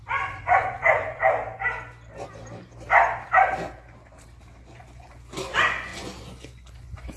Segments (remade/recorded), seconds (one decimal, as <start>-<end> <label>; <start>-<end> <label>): 0.0-1.2 remade; 1.2-4.6 recorded; 4.6-7.2 remade